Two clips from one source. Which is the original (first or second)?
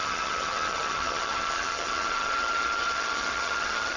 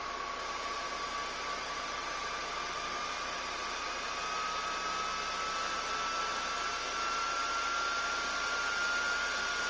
second